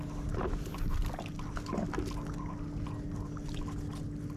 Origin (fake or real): real